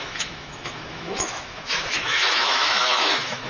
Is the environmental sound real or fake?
fake